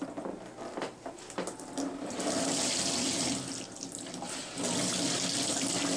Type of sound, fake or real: real